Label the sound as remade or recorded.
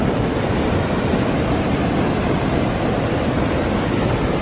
recorded